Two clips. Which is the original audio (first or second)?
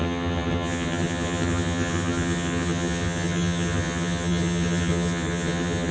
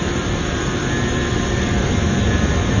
second